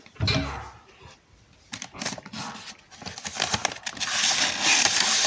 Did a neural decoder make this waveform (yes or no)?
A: no